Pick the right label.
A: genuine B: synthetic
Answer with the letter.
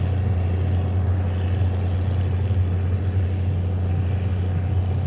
A